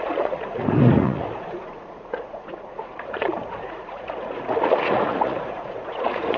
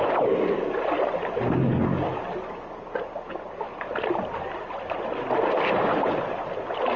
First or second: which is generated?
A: first